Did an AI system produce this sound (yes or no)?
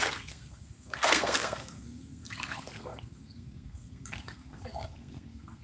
yes